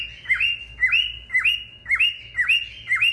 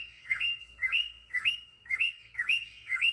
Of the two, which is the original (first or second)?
first